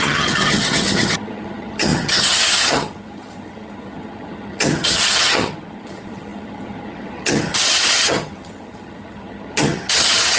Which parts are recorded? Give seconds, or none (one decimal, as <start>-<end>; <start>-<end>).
none